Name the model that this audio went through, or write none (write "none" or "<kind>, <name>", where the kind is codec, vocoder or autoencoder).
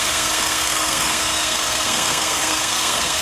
codec, SNAC